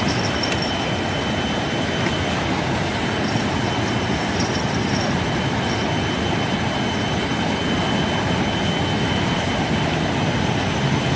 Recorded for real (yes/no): yes